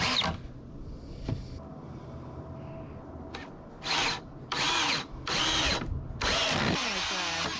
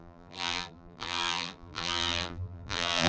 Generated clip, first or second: second